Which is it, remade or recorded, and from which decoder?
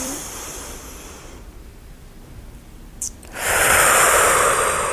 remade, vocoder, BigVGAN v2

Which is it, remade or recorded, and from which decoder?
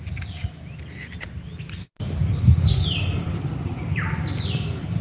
recorded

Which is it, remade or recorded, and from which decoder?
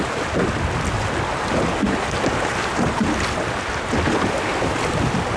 recorded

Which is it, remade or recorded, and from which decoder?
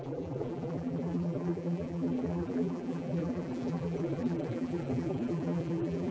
remade, vocoder, BigVGAN v2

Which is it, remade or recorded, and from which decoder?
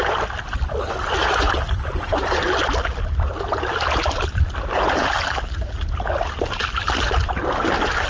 recorded